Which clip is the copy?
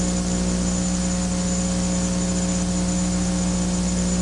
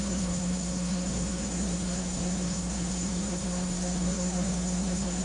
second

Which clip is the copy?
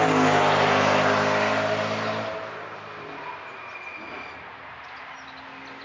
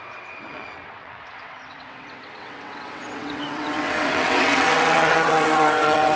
second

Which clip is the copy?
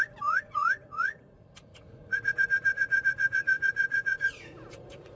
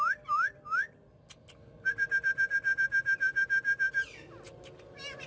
first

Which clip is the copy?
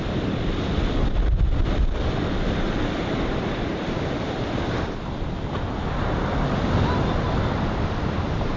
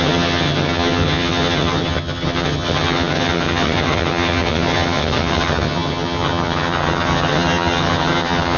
second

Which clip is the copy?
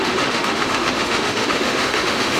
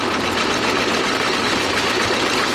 first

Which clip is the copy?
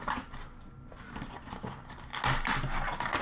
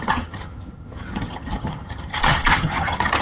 second